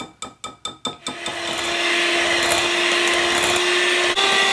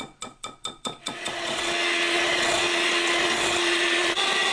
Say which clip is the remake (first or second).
second